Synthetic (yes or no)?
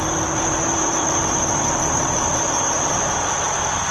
yes